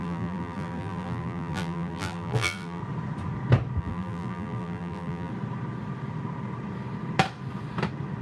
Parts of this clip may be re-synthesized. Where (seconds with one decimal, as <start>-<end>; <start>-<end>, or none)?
0.0-2.8; 3.8-5.3

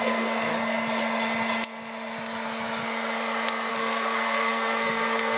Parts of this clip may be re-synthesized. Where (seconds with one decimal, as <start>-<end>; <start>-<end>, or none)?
0.0-0.5; 3.7-5.4

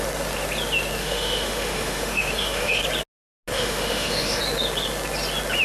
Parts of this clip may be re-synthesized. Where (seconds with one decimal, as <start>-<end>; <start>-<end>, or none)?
1.0-2.8; 3.5-4.4